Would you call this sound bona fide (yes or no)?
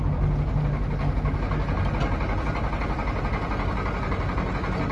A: yes